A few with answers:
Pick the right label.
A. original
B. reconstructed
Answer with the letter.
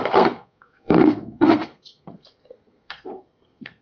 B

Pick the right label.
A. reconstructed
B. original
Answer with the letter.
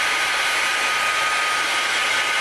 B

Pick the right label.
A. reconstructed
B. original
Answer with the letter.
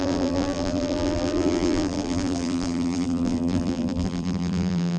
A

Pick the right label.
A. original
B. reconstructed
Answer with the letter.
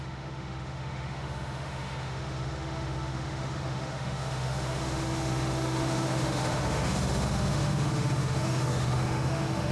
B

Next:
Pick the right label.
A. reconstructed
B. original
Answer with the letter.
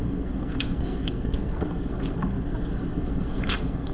A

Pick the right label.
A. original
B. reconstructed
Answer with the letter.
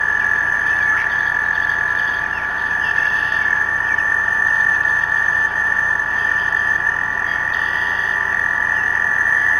B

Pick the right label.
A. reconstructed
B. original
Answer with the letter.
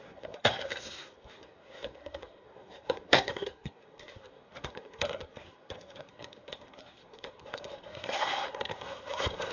A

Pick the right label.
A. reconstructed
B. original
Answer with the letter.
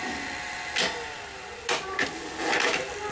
B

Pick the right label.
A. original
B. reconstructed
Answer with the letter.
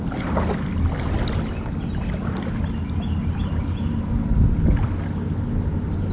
A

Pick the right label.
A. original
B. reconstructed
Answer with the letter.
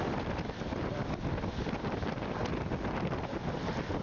A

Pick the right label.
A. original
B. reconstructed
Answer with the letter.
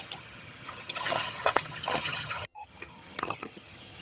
B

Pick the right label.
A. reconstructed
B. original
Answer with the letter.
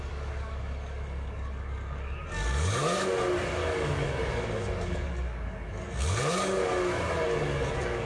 A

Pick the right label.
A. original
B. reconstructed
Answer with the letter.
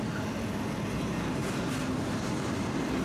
A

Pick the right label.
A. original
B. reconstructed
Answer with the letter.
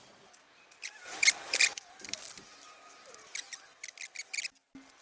A